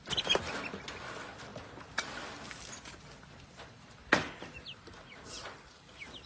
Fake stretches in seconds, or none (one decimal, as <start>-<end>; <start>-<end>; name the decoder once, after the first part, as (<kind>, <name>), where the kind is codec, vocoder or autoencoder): none